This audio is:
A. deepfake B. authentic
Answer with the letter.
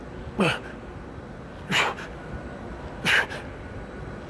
B